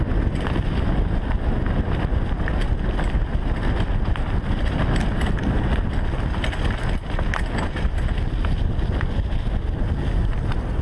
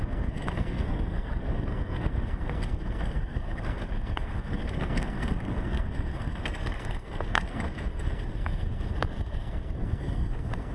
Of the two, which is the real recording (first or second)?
first